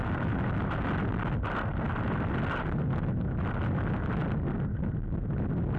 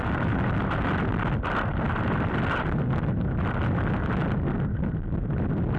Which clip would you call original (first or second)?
first